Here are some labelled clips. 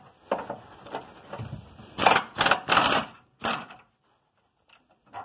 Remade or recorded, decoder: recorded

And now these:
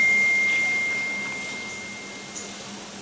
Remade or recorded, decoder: recorded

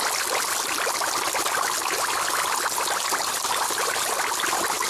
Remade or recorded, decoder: recorded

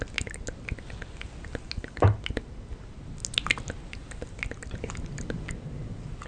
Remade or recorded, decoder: recorded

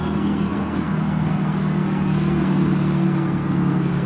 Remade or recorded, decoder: remade, codec, SNAC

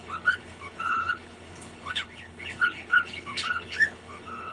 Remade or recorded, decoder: remade, codec, HILCodec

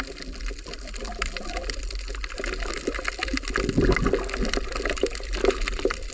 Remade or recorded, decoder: recorded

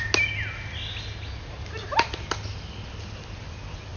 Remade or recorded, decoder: recorded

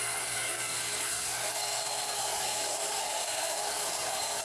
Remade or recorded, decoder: remade, codec, SNAC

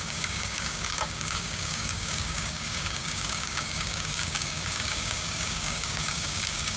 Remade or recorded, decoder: remade, codec, DAC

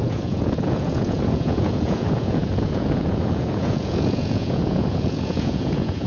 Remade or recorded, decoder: remade, vocoder, Vocos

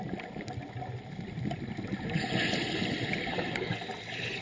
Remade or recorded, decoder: recorded